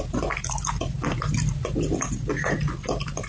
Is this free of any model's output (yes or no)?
no